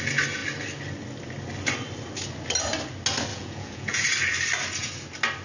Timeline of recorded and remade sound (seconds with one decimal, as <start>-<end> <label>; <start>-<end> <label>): 0.0-3.3 recorded; 3.3-4.0 remade; 4.0-5.4 recorded